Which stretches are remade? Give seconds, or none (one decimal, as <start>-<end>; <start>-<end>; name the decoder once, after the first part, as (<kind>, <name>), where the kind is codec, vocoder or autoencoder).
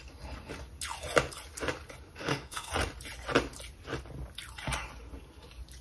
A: 2.2-2.7 (autoencoder, DAC-VAE)